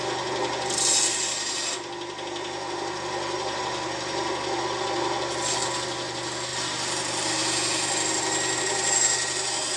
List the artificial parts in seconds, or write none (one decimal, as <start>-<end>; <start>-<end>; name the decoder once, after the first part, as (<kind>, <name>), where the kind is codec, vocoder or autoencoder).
none